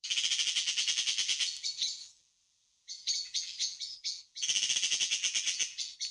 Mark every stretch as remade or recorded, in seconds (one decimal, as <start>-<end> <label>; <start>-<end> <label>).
0.0-6.1 remade